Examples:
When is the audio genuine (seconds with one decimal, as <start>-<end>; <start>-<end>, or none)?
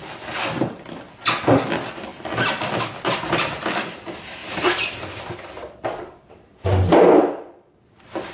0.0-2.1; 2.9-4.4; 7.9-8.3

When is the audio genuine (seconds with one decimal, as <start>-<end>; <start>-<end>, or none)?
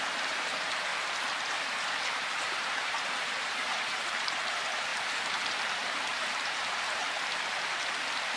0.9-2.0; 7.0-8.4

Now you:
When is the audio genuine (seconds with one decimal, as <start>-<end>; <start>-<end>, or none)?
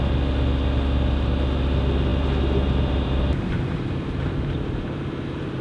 0.0-2.1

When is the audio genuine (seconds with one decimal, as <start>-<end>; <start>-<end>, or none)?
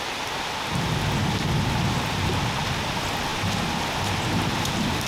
0.0-5.1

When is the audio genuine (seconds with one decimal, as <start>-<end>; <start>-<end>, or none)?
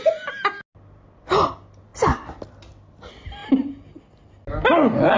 0.0-5.2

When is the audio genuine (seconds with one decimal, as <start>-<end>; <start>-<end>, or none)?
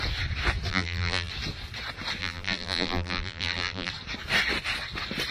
0.0-0.7; 1.3-2.2; 3.9-5.3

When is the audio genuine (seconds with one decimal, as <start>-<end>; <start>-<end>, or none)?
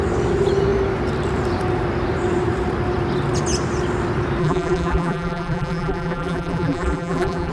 0.0-4.4